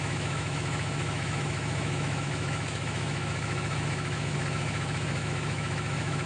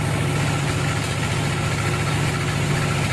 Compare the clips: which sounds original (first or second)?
second